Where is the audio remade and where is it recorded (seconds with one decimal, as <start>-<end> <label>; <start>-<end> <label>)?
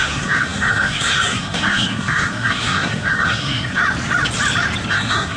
0.0-3.8 remade; 3.8-4.9 recorded; 4.9-5.4 remade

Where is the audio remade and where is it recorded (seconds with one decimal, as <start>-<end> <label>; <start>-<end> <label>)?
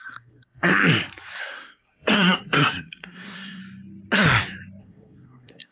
0.0-0.7 remade; 0.7-1.4 recorded; 1.4-3.6 remade; 3.6-4.8 recorded; 4.8-5.7 remade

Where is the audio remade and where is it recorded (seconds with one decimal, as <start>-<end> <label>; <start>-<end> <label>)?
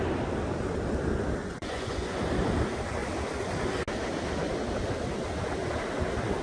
0.0-1.4 recorded; 1.4-2.2 remade; 2.2-6.4 recorded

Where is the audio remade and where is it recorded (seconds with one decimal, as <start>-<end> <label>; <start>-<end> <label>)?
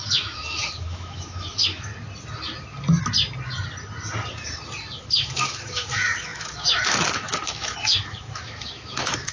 0.0-1.9 remade; 1.9-5.0 recorded; 5.0-9.3 remade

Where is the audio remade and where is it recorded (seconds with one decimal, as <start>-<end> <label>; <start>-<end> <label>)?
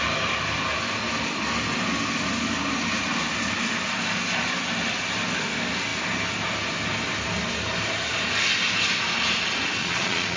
0.0-9.8 recorded; 9.8-10.4 remade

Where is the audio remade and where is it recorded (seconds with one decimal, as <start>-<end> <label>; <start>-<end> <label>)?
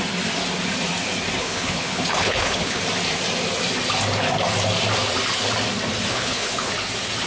0.0-1.4 recorded; 1.4-2.8 remade; 2.8-6.1 recorded; 6.1-6.7 remade; 6.7-7.3 recorded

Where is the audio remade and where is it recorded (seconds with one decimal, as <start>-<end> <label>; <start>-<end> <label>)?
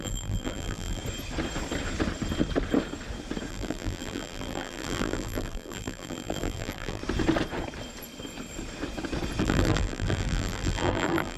0.0-1.0 remade; 1.0-3.5 recorded; 3.5-7.0 remade; 7.0-9.4 recorded; 9.4-11.4 remade